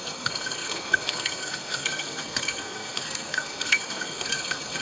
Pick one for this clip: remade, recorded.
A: remade